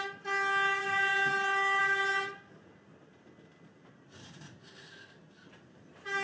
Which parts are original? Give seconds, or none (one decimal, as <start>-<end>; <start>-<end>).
0.0-6.2